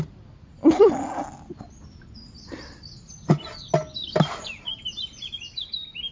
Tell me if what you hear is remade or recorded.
recorded